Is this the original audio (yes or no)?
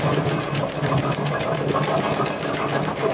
yes